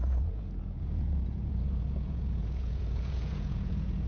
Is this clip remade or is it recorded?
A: remade